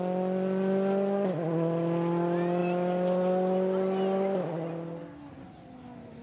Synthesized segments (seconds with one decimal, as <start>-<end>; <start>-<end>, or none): none